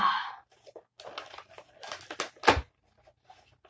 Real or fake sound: real